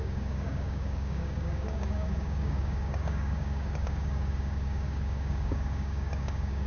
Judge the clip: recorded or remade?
remade